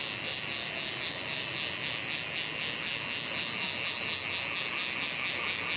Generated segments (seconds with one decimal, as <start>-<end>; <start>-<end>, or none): none